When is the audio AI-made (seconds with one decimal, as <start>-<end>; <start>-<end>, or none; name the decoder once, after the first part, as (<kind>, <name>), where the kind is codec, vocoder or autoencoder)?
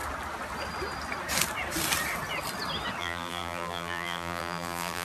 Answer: 3.0-5.0 (vocoder, BigVGAN v2)